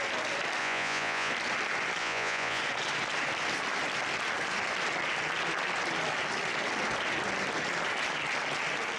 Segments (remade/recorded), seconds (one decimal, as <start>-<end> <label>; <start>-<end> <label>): 0.0-0.6 recorded; 0.6-1.3 remade; 1.3-2.0 recorded; 2.0-2.6 remade; 2.6-9.0 recorded